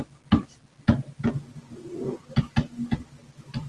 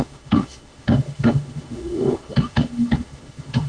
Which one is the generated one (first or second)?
second